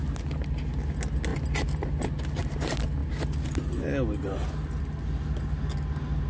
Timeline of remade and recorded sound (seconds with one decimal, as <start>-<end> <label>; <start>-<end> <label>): 0.0-6.3 recorded